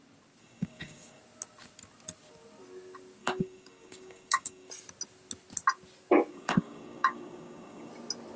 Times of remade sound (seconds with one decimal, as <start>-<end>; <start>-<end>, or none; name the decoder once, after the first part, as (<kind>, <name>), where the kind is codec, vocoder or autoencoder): 0.4-1.2 (codec, DAC); 3.2-4.7; 6.3-7.9